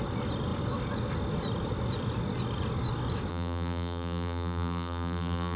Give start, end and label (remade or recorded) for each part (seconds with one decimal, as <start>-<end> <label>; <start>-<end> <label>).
0.0-3.3 recorded; 3.3-5.6 remade